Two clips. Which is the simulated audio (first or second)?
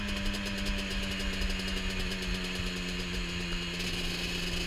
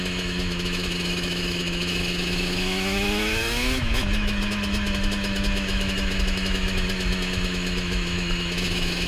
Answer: second